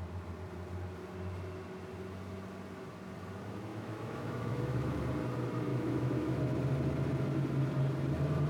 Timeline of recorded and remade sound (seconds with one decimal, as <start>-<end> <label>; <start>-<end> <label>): 0.0-3.7 recorded; 3.7-5.0 remade; 5.0-5.7 recorded; 5.7-6.4 remade; 6.4-8.5 recorded